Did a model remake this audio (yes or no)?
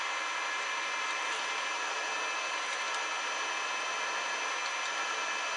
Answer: no